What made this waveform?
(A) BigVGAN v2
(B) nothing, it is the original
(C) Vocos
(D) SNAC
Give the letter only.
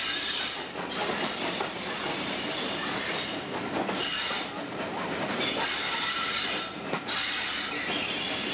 B